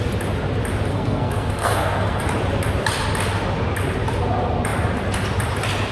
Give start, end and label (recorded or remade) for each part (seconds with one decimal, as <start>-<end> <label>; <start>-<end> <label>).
0.0-0.9 recorded; 0.9-2.2 remade; 2.2-5.9 recorded